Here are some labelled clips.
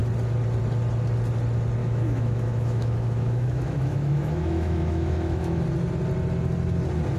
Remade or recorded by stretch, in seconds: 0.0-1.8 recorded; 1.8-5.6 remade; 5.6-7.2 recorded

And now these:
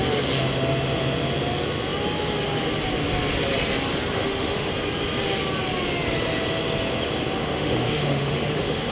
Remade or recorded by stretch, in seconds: 0.0-4.1 recorded; 4.1-4.7 remade; 4.7-7.4 recorded; 7.4-8.9 remade